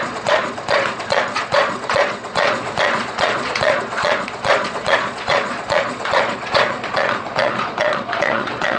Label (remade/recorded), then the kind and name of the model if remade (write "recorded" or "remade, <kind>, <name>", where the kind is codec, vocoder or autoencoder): remade, vocoder, Vocos